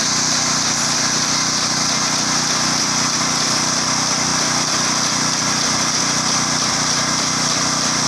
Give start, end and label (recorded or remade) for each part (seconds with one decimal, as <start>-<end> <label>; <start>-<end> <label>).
0.0-8.1 recorded